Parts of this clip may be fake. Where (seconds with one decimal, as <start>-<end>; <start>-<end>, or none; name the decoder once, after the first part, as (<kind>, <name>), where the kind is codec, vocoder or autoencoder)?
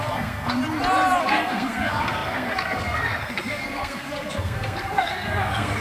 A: 0.0-0.6 (codec, SNAC); 1.2-5.8